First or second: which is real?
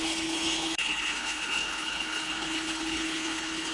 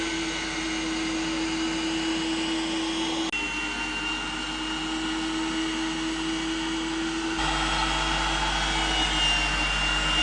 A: second